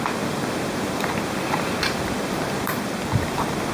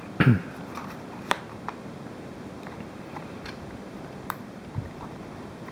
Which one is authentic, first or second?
first